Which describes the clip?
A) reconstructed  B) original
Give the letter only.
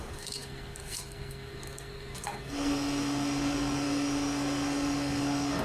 A